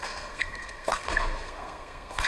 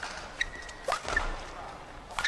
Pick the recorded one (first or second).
second